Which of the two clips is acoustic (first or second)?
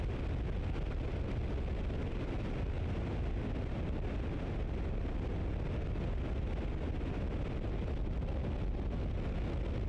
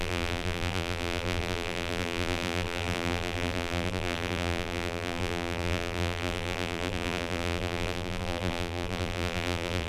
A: first